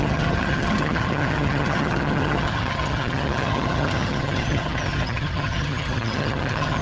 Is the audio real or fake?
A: fake